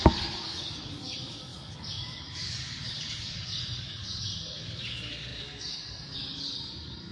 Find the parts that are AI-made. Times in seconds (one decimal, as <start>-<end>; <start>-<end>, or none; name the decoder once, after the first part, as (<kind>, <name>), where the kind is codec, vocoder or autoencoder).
0.0-7.1 (codec, DAC)